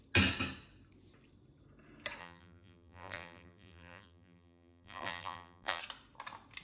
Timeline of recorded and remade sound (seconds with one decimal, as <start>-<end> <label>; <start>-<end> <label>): 0.0-2.2 recorded; 2.2-5.8 remade; 5.8-6.6 recorded